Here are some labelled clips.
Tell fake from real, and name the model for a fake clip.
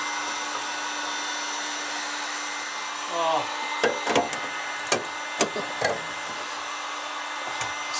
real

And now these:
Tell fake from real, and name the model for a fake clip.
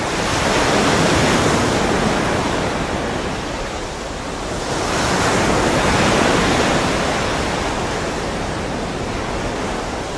real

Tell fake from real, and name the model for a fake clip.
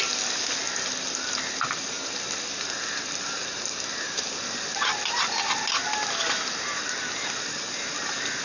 real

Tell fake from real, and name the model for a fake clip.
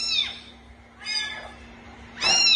real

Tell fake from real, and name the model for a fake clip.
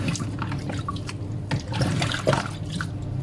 real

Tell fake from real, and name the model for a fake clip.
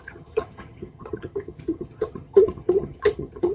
fake, vocoder, HiFi-GAN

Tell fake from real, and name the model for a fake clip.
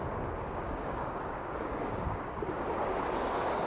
fake, codec, DAC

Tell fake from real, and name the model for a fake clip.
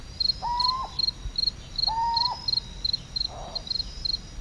fake, vocoder, BigVGAN v2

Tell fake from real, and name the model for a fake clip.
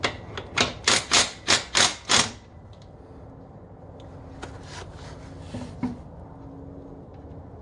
real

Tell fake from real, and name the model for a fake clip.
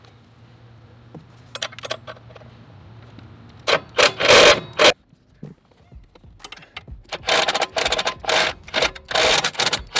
real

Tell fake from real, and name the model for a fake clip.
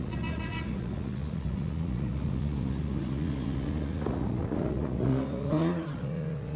fake, vocoder, Vocos